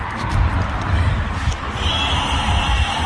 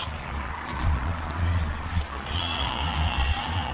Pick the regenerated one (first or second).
second